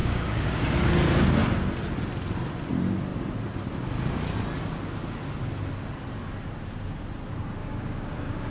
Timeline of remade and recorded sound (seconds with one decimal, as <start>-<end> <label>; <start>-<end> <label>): 0.0-0.6 remade; 0.6-7.6 recorded; 7.6-8.5 remade